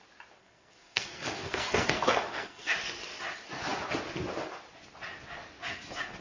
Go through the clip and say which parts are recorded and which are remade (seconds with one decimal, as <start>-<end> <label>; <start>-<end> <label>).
0.0-0.4 recorded; 0.4-2.7 remade; 2.7-6.2 recorded